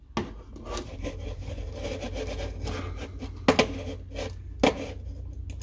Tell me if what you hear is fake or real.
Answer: real